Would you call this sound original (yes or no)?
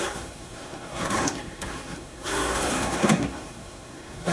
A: no